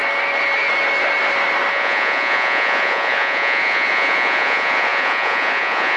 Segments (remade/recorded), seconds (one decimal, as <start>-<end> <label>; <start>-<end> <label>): 0.0-1.7 recorded; 1.7-6.0 remade